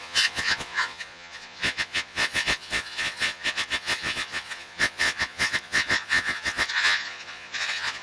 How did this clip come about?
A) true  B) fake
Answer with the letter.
B